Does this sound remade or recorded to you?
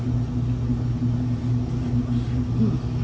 recorded